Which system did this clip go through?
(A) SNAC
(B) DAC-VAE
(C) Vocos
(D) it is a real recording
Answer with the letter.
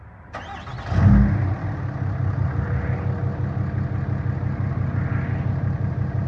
D